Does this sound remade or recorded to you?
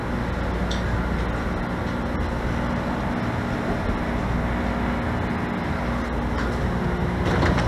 recorded